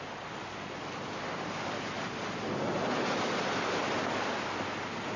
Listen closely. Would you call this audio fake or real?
real